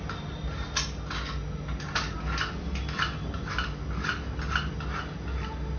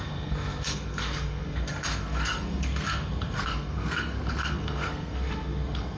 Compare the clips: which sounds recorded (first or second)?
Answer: first